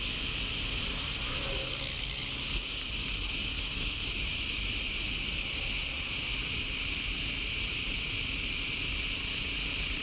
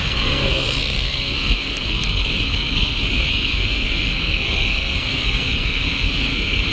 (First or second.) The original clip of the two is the first